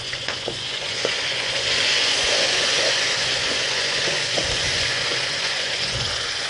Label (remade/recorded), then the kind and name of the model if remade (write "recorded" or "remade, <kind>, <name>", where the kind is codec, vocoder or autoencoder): remade, vocoder, Vocos